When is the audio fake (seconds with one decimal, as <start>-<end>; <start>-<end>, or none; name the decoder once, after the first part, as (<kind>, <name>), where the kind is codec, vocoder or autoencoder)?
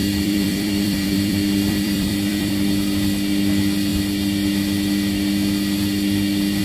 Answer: 0.0-2.5 (vocoder, BigVGAN v2)